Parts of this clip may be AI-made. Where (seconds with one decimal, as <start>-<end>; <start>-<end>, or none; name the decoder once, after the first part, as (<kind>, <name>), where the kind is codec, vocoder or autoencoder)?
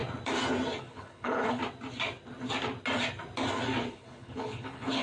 0.8-1.6 (codec, HILCodec); 3.9-5.0